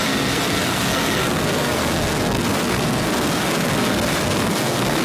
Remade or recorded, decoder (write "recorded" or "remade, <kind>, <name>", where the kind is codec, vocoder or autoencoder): remade, codec, SNAC